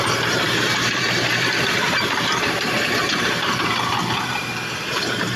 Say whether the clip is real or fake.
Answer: fake